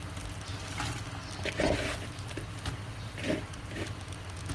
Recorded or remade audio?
recorded